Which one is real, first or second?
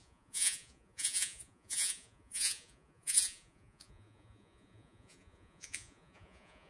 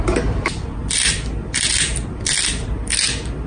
second